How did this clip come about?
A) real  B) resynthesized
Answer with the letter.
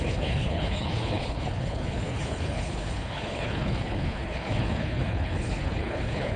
B